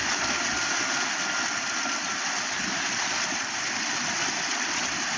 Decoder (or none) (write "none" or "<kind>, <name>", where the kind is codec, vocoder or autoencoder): none